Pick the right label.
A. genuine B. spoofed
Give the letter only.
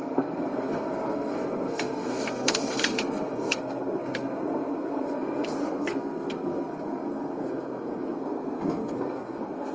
B